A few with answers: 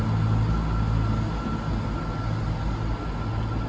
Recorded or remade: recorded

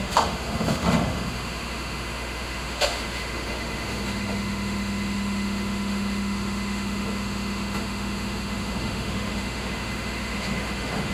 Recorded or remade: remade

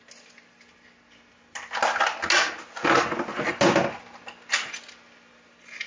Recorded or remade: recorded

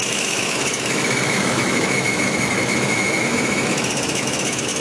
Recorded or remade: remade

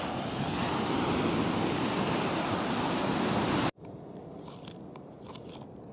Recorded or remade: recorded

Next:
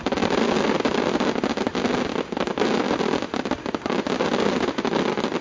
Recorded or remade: recorded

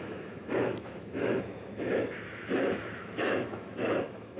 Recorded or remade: remade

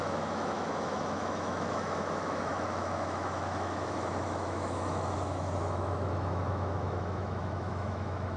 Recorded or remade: remade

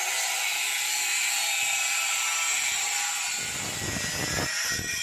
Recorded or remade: recorded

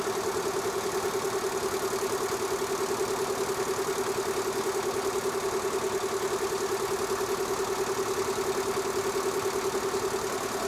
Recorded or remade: recorded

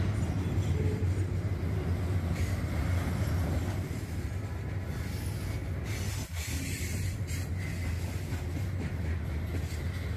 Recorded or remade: recorded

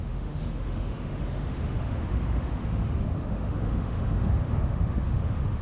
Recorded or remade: remade